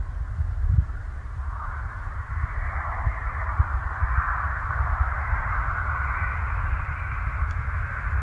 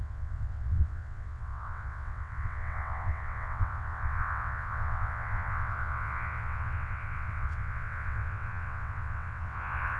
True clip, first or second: first